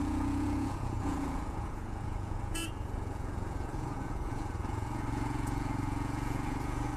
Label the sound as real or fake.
fake